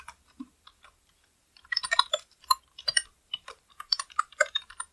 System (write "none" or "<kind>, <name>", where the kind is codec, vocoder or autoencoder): vocoder, BigVGAN v2